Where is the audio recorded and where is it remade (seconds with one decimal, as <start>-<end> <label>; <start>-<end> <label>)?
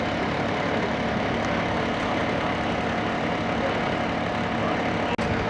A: 0.0-5.5 recorded